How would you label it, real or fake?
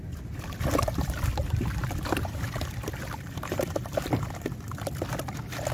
fake